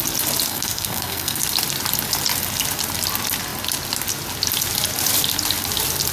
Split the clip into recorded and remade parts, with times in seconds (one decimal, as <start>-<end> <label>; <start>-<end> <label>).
0.0-0.5 recorded; 0.5-1.4 remade; 1.4-6.1 recorded